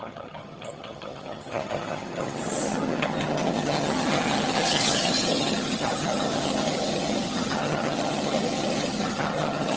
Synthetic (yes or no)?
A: yes